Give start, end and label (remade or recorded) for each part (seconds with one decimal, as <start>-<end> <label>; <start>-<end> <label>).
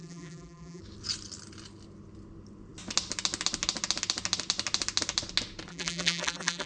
0.0-0.8 remade; 0.8-5.7 recorded; 5.7-6.7 remade